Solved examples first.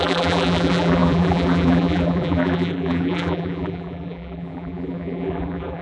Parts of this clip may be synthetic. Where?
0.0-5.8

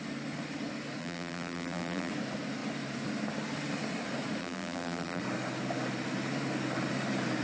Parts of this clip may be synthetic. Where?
1.0-2.1; 4.4-5.2

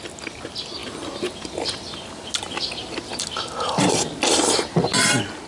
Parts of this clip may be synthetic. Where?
0.8-2.3